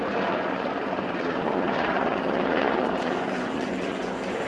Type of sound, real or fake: fake